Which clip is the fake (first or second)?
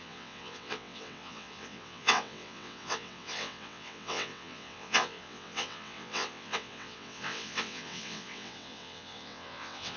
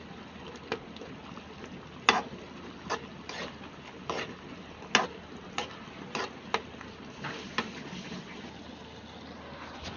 first